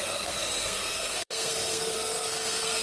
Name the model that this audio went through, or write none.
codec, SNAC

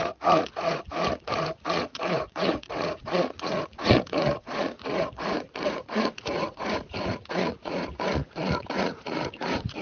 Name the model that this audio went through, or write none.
vocoder, Vocos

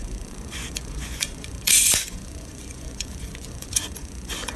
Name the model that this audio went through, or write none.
vocoder, Vocos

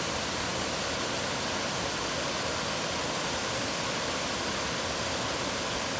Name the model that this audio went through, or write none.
none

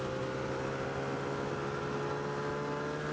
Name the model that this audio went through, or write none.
none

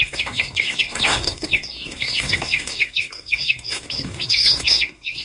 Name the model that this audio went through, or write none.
codec, SNAC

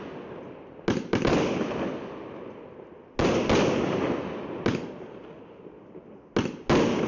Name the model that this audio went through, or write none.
none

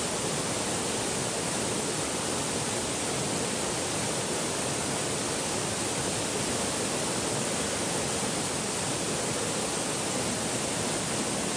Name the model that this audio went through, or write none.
none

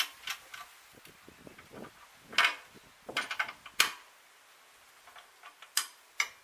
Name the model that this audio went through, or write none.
none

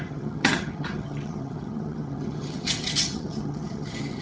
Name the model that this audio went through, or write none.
vocoder, HiFi-GAN